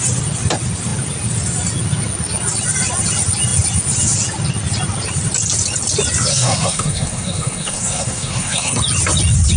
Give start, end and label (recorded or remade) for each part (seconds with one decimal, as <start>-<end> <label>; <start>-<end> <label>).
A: 0.0-6.3 recorded; 6.3-8.8 remade; 8.8-9.6 recorded